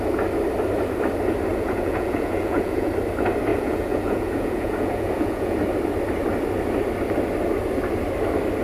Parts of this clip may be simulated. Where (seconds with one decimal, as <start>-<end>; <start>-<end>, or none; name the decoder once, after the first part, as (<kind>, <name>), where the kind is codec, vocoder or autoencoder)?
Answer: 1.5-2.9 (vocoder, Vocos); 3.5-5.6